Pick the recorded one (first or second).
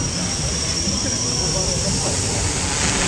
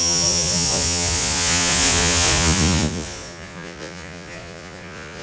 first